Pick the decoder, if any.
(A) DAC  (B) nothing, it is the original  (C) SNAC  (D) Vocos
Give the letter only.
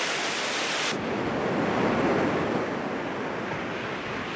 B